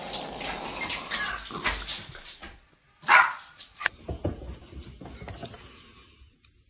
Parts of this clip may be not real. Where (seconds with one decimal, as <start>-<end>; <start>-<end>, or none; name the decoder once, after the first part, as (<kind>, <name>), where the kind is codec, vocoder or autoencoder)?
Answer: 2.4-3.9 (vocoder, Vocos)